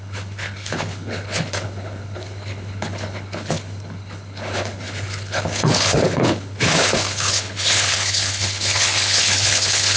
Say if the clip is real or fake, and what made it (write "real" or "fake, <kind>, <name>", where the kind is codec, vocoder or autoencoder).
fake, codec, HILCodec